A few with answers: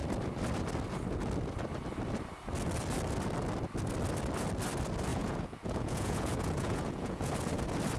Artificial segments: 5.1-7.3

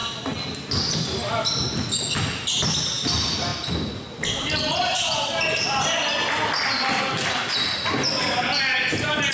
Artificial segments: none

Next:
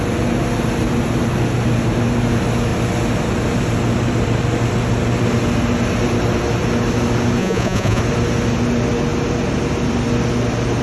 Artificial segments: 7.4-8.0

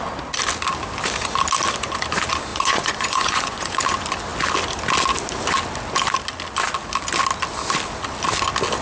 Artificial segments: 2.5-3.8

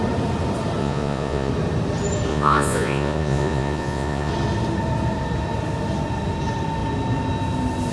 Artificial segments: 0.8-1.5; 2.3-4.3

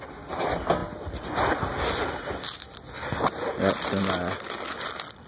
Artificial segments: none

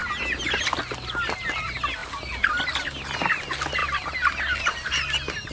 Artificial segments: none

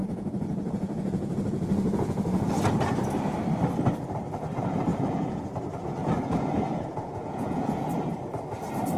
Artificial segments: 0.0-2.6; 4.9-5.4; 6.0-7.9